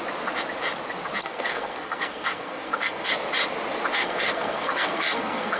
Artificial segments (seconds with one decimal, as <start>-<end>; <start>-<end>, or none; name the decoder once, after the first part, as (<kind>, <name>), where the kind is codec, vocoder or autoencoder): 1.2-3.1 (codec, SNAC); 4.0-5.6